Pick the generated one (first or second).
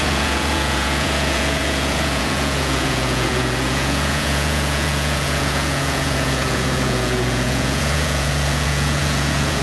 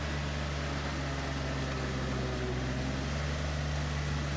first